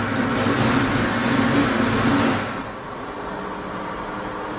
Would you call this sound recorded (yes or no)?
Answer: yes